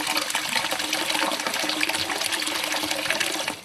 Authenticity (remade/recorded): recorded